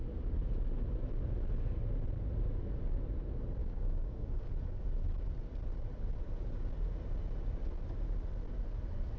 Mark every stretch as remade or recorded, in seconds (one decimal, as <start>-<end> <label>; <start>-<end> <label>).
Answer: 0.0-3.6 recorded; 3.6-4.5 remade; 4.5-9.2 recorded